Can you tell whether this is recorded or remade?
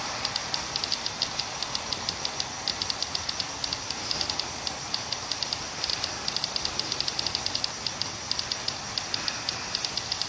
recorded